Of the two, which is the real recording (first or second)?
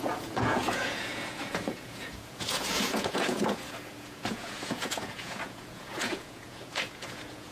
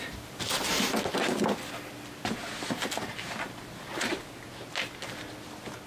second